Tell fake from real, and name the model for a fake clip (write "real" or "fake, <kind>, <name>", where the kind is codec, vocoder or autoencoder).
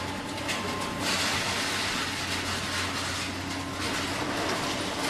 real